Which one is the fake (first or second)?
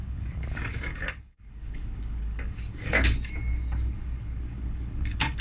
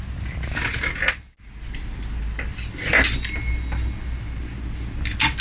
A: first